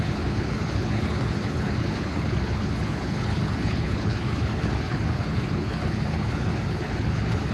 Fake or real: fake